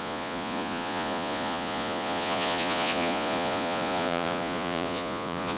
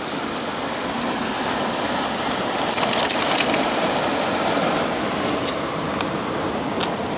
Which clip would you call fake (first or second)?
first